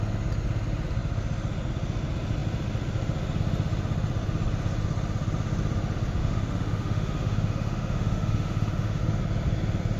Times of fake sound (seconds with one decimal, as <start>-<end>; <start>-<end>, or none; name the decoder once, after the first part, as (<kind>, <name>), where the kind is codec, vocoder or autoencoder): 6.2-9.0 (autoencoder, DAC-VAE)